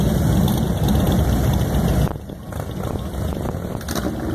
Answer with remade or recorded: recorded